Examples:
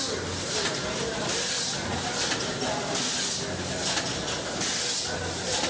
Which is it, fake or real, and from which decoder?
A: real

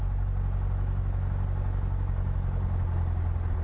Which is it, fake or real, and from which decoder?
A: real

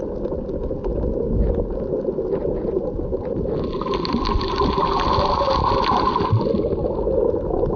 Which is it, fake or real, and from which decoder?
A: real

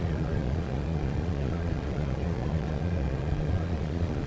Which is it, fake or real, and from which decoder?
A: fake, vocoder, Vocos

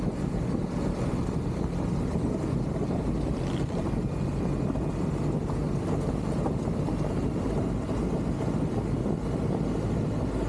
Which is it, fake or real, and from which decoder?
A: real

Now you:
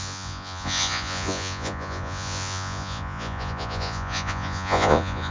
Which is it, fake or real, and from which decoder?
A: fake, vocoder, Vocos